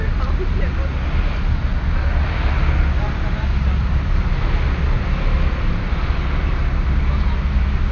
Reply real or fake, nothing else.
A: real